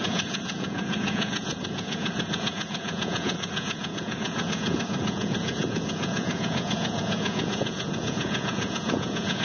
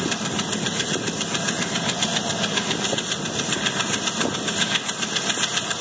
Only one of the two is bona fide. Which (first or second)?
second